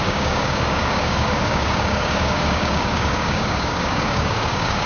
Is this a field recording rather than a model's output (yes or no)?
no